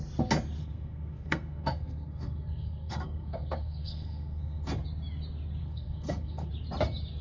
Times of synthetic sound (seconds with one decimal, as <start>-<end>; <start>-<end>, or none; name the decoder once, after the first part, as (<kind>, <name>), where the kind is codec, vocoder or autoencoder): 0.6-4.7 (codec, SNAC); 5.6-6.5